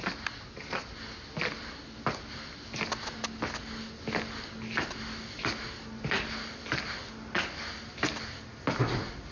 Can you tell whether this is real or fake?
real